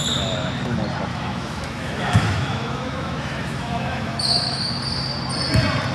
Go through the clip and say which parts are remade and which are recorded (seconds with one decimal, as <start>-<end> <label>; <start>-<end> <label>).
0.0-1.1 recorded; 1.1-4.6 remade; 4.6-5.9 recorded